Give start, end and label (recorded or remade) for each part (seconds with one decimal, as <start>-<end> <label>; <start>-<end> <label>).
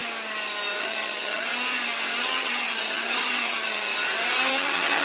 0.0-0.8 recorded; 0.8-1.5 remade; 1.5-2.2 recorded; 2.2-3.9 remade; 3.9-4.5 recorded; 4.5-5.0 remade